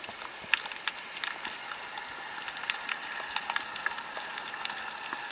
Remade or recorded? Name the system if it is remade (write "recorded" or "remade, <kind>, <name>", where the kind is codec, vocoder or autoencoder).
recorded